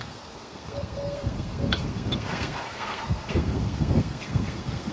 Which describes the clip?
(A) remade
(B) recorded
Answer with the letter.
A